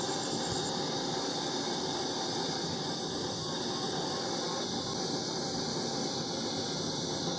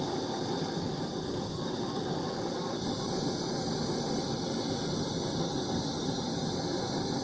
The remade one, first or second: second